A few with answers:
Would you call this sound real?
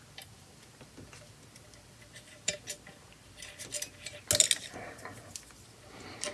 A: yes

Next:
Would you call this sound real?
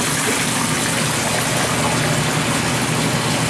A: yes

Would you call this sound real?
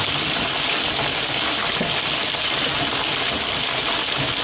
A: yes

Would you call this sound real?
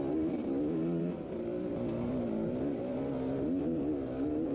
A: yes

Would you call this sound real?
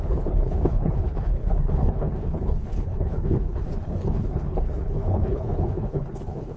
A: no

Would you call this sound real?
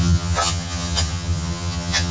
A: no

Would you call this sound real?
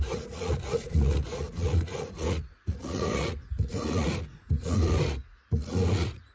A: no